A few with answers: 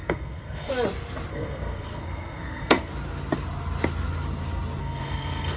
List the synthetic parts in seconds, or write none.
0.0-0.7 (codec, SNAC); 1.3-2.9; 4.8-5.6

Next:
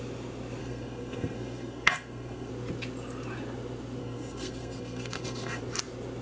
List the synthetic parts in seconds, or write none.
0.6-2.5 (codec, SNAC); 4.0-5.6

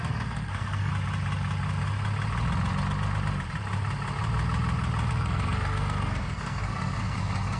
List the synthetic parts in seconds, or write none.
0.0-0.9 (codec, SNAC); 5.1-7.6

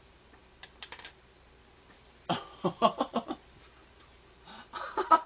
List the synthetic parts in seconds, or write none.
none

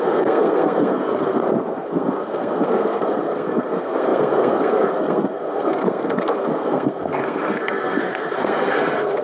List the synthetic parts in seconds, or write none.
0.0-9.2 (codec, SNAC)

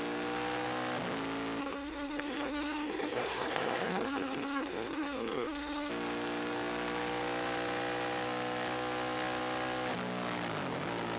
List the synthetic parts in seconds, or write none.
1.6-5.9 (codec, SNAC)

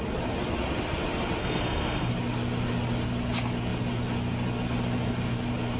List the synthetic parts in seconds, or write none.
1.4-2.1 (codec, SNAC)

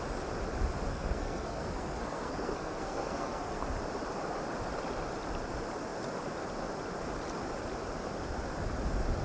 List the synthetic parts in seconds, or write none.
0.9-3.6 (codec, SNAC)